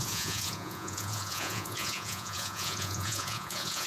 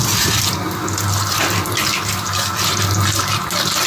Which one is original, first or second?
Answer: second